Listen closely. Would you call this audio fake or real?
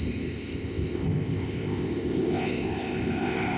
fake